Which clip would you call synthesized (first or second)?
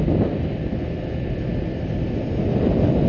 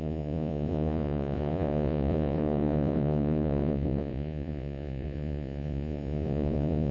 second